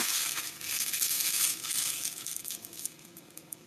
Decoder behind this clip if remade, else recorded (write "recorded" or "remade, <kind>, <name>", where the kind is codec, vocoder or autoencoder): remade, codec, SNAC